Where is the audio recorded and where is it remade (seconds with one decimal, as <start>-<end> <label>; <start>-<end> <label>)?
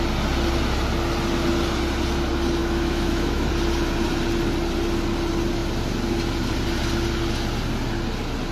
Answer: 0.0-2.6 recorded; 2.6-3.5 remade; 3.5-8.5 recorded